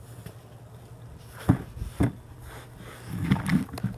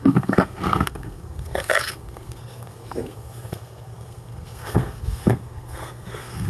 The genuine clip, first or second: first